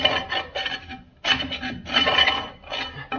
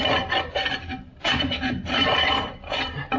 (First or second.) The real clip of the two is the first